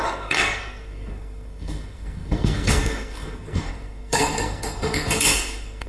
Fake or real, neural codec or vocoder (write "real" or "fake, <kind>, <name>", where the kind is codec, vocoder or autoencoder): fake, codec, SNAC